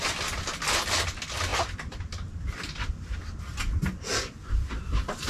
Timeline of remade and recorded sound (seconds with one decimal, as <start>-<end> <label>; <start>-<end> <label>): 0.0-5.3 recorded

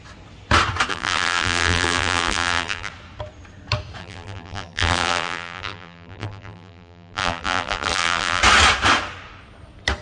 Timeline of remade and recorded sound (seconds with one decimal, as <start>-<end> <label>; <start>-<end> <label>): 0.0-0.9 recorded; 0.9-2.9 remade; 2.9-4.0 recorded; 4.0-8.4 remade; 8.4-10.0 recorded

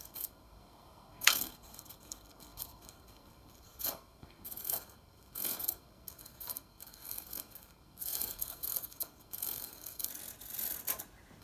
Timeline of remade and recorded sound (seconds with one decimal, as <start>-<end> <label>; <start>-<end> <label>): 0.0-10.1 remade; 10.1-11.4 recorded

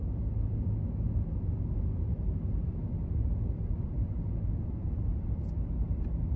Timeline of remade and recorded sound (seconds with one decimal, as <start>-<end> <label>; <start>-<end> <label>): 0.0-2.1 recorded; 2.1-4.2 remade; 4.2-5.9 recorded; 5.9-6.4 remade

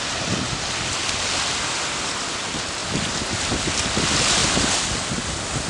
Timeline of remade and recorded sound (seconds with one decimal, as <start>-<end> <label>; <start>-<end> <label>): 0.0-5.7 recorded

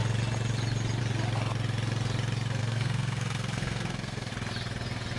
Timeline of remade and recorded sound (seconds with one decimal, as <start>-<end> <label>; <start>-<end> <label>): 0.0-2.6 recorded; 2.6-4.3 remade; 4.3-5.2 recorded

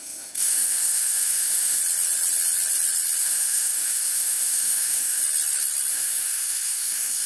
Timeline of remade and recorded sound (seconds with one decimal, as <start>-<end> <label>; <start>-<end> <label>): 0.0-1.8 remade; 1.8-3.2 recorded; 3.2-5.2 remade; 5.2-5.9 recorded; 5.9-7.3 remade

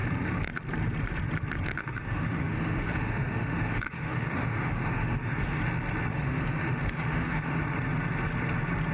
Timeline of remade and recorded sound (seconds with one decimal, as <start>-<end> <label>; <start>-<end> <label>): 0.0-1.8 recorded; 1.8-5.6 remade; 5.6-6.1 recorded; 6.1-7.6 remade; 7.6-8.9 recorded